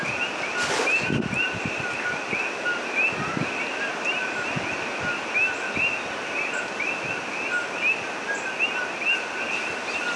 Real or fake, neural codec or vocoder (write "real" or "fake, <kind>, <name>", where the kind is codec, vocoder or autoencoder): real